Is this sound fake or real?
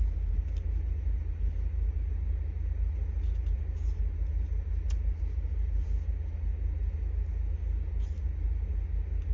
real